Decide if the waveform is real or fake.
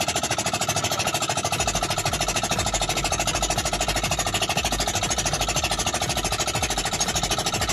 real